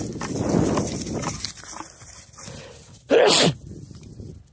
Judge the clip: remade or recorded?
recorded